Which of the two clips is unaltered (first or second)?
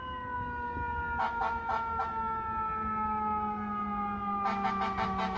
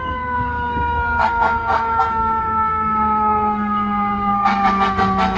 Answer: first